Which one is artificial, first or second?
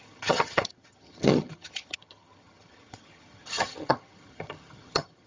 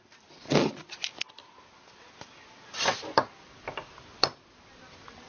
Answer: first